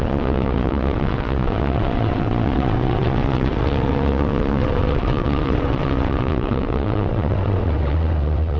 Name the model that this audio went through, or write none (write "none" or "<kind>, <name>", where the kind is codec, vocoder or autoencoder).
vocoder, WaveNeXt